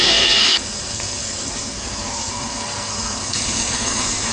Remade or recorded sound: remade